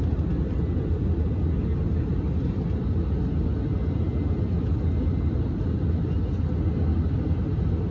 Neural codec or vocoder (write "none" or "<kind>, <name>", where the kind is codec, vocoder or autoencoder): none